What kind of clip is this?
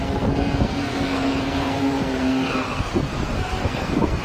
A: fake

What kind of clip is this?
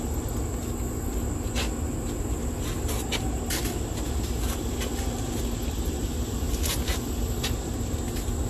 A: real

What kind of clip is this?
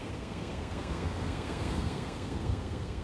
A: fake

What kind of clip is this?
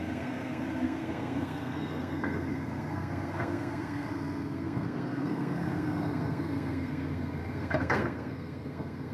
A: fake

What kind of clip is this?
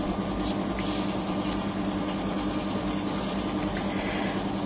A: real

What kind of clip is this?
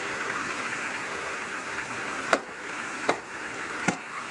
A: fake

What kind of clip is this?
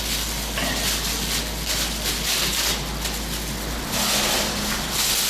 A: real